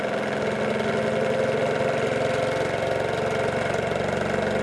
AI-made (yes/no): no